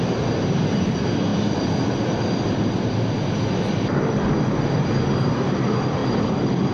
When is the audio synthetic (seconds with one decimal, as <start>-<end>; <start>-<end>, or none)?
0.0-1.3; 5.3-6.0